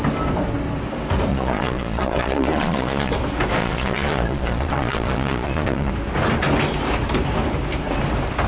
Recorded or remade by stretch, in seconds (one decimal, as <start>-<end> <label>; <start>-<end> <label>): 0.0-1.3 recorded; 1.3-3.1 remade; 3.1-3.6 recorded; 3.6-5.9 remade; 5.9-8.5 recorded